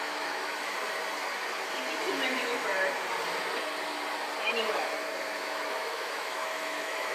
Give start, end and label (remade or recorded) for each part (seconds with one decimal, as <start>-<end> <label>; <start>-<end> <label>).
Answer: 0.0-0.5 remade; 0.5-2.3 recorded; 2.3-2.7 remade; 2.7-5.4 recorded; 5.4-7.1 remade